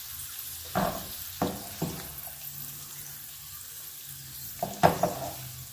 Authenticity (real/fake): real